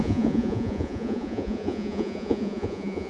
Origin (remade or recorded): remade